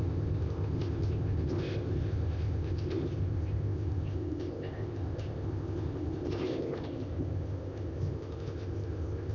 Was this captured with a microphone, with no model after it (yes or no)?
no